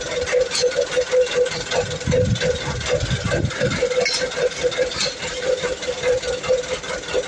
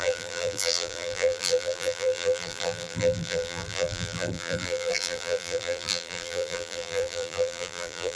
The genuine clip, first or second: first